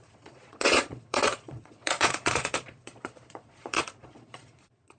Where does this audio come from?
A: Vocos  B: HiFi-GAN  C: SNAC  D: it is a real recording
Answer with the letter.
A